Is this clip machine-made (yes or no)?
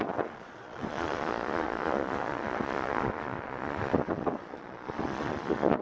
yes